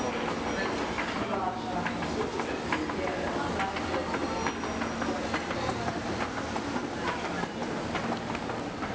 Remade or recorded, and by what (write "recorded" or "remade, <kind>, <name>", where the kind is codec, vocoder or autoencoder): recorded